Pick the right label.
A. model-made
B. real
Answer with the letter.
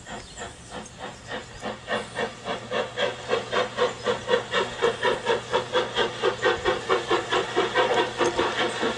B